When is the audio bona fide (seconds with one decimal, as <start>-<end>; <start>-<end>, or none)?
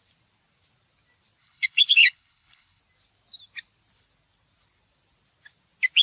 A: 0.0-1.4; 2.8-6.0